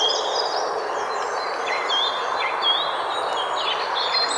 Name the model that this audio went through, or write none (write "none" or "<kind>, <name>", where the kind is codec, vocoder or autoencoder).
none